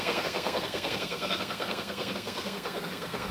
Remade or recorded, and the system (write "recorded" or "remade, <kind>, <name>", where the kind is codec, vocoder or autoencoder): remade, codec, SNAC